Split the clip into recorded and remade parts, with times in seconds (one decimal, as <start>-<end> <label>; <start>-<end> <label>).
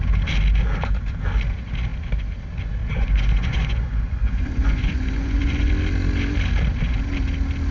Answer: 0.0-2.8 recorded; 2.8-5.7 remade; 5.7-7.7 recorded